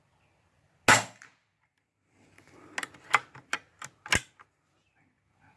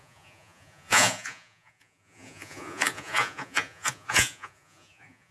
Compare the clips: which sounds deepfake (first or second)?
second